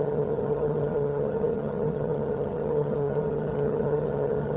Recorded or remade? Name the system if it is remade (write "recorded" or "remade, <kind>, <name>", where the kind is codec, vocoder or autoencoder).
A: remade, vocoder, HiFi-GAN